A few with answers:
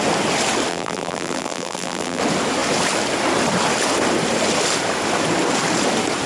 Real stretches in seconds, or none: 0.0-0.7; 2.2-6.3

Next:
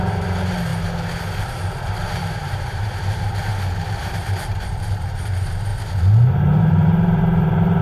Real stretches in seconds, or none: 0.7-1.4; 3.5-4.2; 5.7-6.6